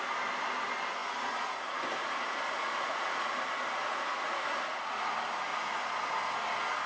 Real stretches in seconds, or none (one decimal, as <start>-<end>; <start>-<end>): 0.0-1.0; 5.1-5.5; 6.0-6.9